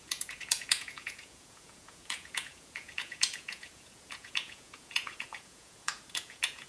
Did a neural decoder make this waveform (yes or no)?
yes